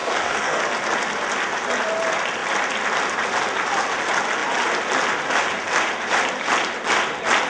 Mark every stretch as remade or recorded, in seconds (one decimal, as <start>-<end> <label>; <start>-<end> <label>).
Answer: 0.0-0.6 remade; 0.6-7.5 recorded